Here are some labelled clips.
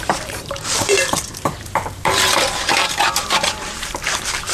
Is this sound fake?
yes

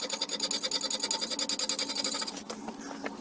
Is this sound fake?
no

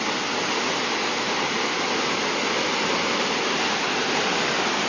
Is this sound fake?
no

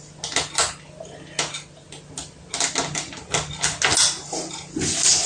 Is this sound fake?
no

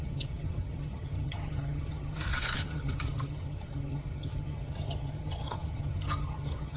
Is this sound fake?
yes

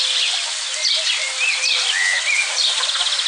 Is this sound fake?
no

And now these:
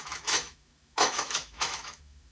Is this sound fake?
yes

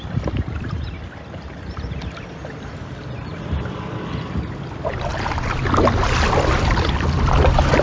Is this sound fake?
yes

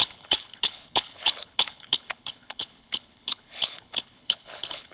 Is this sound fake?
yes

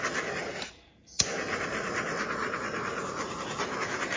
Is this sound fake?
no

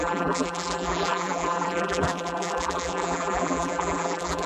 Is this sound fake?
yes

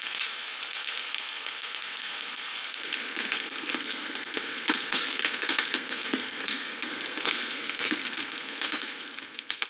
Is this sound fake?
yes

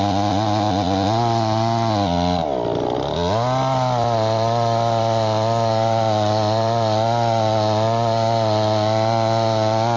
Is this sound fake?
no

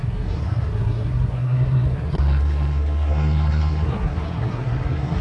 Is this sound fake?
yes